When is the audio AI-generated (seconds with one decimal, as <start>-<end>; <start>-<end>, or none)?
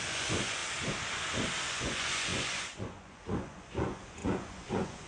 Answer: 0.0-0.6; 1.7-5.1